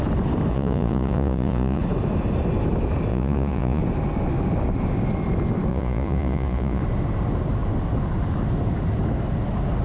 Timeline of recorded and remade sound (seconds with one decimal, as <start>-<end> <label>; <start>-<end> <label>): 0.0-0.5 recorded; 0.5-1.8 remade; 1.8-3.1 recorded; 3.1-3.8 remade; 3.8-5.7 recorded; 5.7-6.8 remade; 6.8-9.8 recorded